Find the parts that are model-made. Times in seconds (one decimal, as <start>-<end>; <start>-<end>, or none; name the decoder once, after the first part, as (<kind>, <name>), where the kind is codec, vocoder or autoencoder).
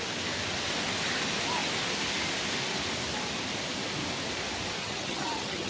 4.8-5.7 (vocoder, HiFi-GAN)